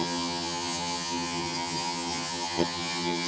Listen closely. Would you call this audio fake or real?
fake